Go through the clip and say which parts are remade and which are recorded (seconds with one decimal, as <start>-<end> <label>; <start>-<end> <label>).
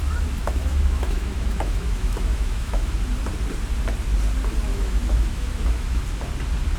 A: 0.0-0.4 recorded; 0.4-2.9 remade; 2.9-4.7 recorded; 4.7-6.0 remade; 6.0-6.8 recorded